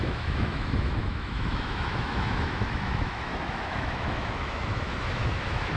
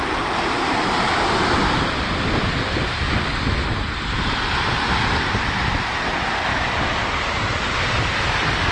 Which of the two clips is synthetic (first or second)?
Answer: first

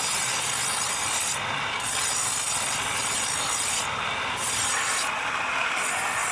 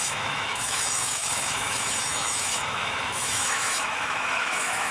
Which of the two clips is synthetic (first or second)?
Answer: second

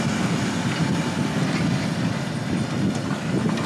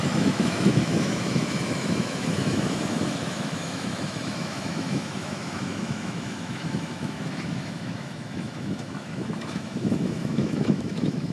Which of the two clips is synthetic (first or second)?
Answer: second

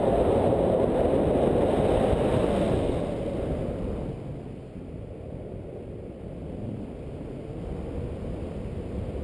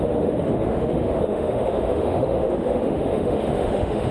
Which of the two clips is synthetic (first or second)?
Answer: second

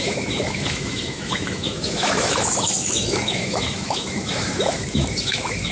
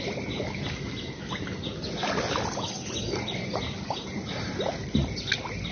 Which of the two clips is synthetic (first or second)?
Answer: first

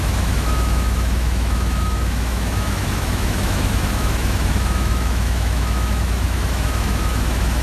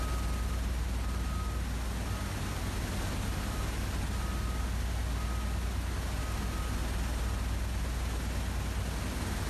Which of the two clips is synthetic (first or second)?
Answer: first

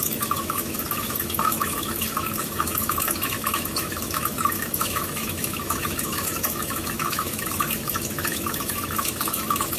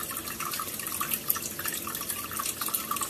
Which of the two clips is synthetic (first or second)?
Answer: first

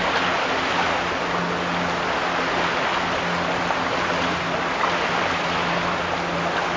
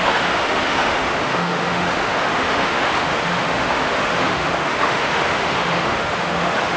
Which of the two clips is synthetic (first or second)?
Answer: second